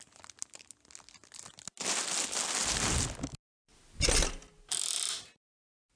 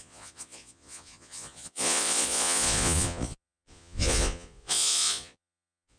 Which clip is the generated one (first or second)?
second